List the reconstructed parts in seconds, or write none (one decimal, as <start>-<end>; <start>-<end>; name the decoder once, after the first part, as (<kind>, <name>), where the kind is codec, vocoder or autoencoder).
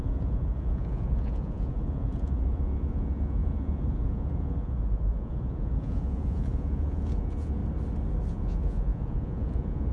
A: 0.0-7.6 (vocoder, Vocos); 8.3-9.9